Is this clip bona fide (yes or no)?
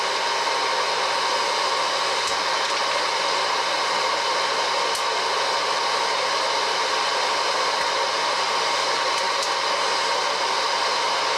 yes